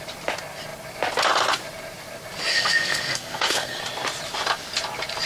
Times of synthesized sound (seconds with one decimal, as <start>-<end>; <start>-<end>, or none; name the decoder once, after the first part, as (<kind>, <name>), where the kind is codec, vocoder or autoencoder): 2.5-3.8 (codec, SNAC)